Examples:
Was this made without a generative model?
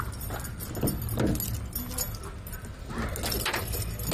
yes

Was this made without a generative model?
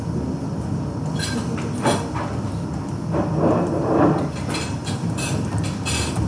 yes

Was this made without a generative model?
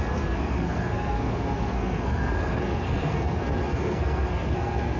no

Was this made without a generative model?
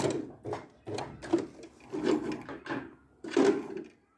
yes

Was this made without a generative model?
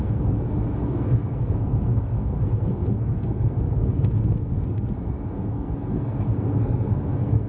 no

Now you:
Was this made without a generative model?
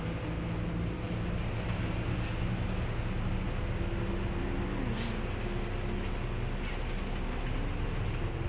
yes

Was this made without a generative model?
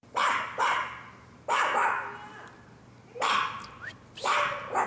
yes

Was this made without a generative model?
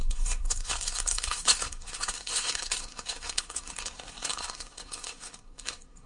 no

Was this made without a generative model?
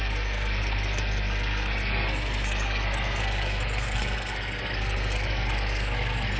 no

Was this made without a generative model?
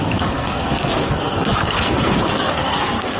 no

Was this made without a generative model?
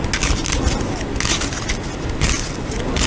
yes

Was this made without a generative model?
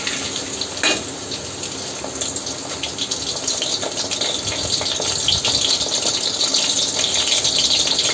yes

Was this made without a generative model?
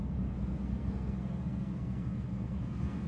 no